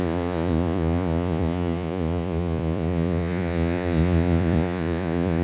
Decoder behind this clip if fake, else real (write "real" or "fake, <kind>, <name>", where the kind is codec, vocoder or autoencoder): fake, vocoder, Vocos